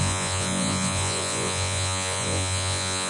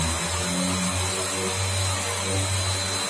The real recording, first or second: second